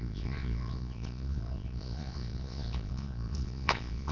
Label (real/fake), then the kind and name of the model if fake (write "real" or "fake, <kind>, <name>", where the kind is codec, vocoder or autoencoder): fake, vocoder, Vocos